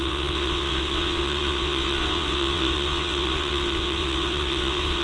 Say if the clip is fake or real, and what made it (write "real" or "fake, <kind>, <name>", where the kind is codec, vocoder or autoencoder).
fake, vocoder, WaveNeXt